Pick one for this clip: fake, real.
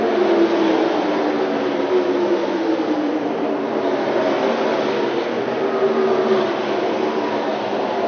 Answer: real